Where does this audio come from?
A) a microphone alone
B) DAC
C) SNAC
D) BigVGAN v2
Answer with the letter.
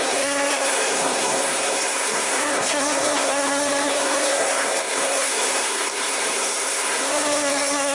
C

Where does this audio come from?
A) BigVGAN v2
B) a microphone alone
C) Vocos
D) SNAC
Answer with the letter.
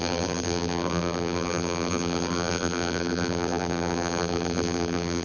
A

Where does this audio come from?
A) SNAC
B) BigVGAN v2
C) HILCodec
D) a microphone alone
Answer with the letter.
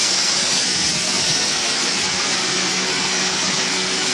A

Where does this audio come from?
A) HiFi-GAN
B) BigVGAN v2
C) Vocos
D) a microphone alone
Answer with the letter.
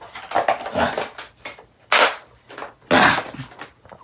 D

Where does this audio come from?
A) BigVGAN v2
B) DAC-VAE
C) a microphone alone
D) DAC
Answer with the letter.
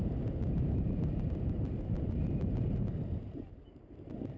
A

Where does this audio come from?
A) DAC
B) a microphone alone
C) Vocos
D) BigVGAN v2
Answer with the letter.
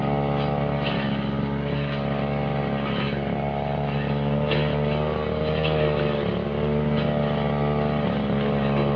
B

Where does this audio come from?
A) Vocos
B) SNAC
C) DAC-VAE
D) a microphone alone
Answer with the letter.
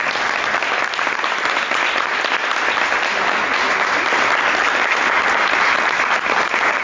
D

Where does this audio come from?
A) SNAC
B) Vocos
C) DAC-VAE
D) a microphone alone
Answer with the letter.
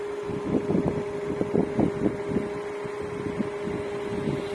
D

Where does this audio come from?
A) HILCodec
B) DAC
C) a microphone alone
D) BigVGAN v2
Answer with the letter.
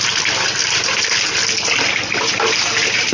C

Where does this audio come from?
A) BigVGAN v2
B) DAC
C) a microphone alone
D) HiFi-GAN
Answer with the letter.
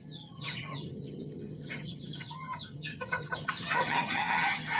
D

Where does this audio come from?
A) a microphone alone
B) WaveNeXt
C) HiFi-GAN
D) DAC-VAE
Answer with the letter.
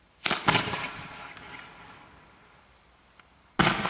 A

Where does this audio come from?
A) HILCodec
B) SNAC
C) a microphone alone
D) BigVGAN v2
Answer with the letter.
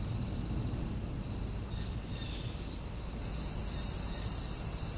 C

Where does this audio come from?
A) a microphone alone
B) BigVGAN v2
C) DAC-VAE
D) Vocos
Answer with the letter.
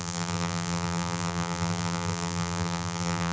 B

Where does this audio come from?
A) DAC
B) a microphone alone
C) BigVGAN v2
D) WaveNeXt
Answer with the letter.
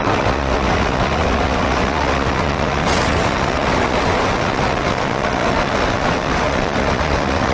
D